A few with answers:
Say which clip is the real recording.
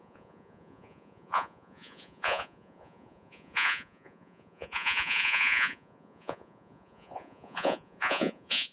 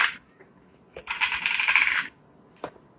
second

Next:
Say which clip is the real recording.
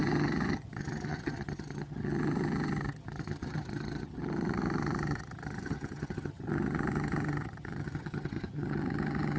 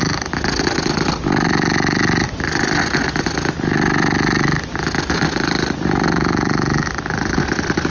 second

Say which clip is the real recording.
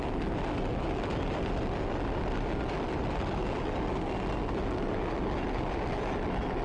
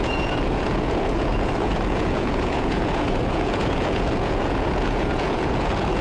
first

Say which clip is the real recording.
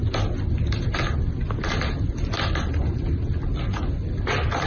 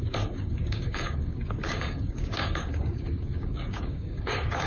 first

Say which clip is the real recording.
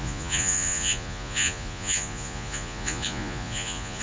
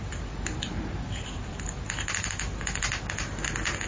second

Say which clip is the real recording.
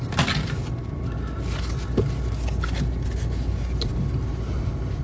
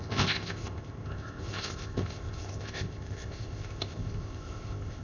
first